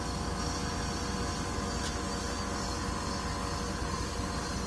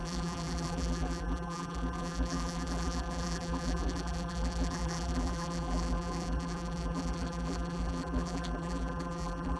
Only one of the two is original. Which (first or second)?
first